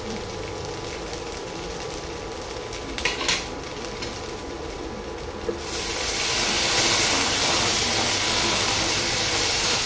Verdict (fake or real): fake